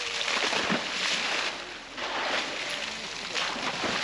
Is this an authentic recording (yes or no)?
yes